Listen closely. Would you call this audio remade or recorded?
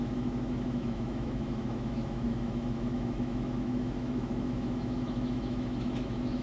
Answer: remade